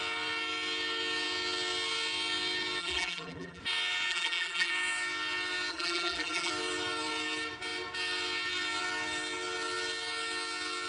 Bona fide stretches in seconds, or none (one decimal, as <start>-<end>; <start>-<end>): 0.0-2.8; 3.6-4.1; 4.7-5.7; 6.5-10.9